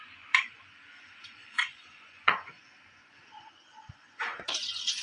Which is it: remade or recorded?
remade